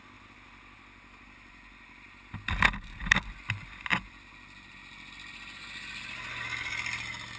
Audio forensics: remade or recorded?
recorded